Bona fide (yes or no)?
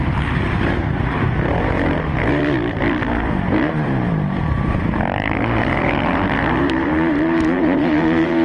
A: no